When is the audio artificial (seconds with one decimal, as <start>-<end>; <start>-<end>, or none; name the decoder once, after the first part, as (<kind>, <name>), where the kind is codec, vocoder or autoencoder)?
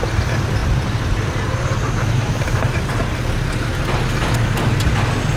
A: 0.6-3.8 (vocoder, BigVGAN v2)